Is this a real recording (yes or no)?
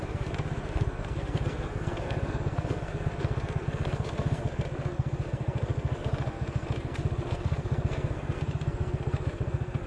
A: no